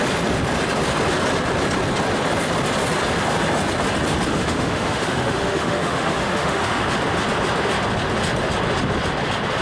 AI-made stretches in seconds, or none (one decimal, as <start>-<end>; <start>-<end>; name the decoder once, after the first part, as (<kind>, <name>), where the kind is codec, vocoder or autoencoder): 4.3-6.8 (autoencoder, DAC-VAE)